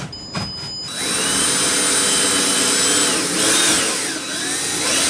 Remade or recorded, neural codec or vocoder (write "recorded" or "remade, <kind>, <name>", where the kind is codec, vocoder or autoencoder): recorded